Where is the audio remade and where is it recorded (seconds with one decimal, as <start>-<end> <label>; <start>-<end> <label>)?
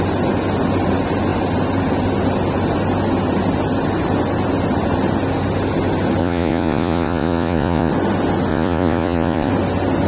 0.0-6.2 recorded; 6.2-7.9 remade; 7.9-8.5 recorded; 8.5-9.5 remade; 9.5-10.1 recorded